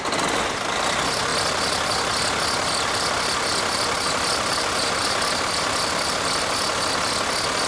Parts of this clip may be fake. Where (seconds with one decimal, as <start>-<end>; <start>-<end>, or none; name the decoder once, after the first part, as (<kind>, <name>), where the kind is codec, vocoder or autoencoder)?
none